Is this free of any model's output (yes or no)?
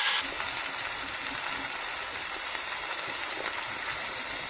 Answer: yes